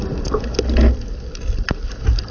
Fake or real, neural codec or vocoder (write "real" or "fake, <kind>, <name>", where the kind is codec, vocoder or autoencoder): real